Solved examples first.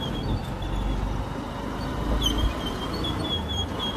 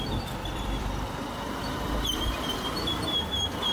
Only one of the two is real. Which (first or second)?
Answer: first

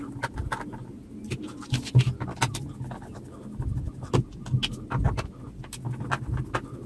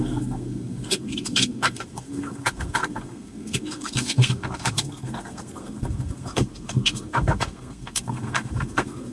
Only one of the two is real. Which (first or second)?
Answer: first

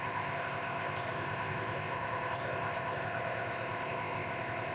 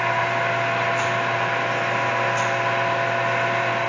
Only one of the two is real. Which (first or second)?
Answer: second